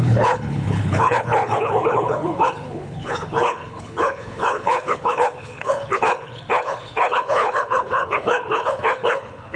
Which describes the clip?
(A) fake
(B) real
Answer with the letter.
A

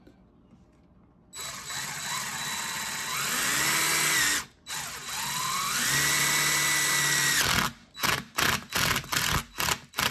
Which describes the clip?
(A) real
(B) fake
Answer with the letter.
A